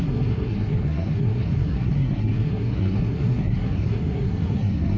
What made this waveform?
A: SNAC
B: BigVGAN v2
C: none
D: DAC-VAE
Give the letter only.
A